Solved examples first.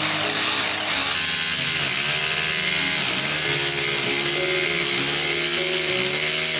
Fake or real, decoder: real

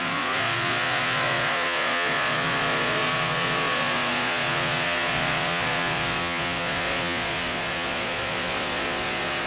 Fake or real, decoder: fake, vocoder, Vocos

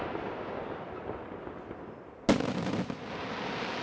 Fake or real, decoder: real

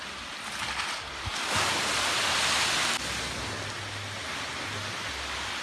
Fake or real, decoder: real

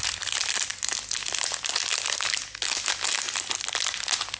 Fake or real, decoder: real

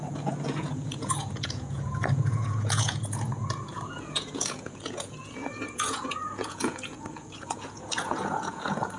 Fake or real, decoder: fake, vocoder, Vocos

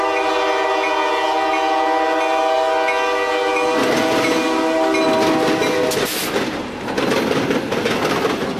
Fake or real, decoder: real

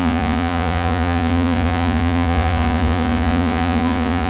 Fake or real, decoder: fake, vocoder, Vocos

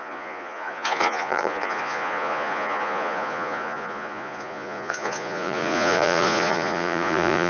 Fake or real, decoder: fake, vocoder, Vocos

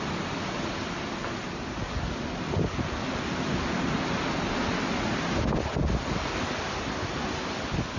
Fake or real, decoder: real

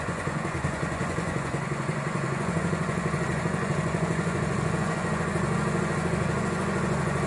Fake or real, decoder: fake, vocoder, Vocos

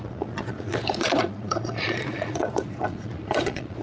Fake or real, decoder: fake, vocoder, Vocos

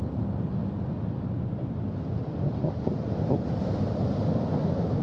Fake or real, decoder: real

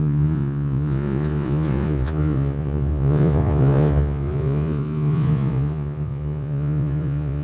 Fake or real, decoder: fake, vocoder, Vocos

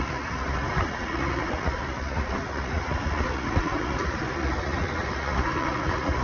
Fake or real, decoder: fake, vocoder, Vocos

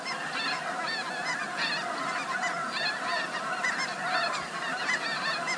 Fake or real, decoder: real